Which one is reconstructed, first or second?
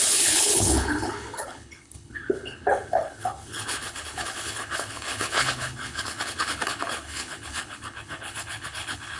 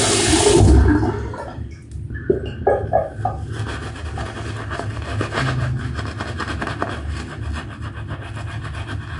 first